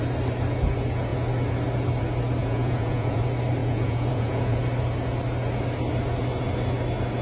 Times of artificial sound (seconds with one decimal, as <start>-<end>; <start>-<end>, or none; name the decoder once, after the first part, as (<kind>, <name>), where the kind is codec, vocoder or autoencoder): 2.4-3.2 (vocoder, Vocos); 3.6-4.6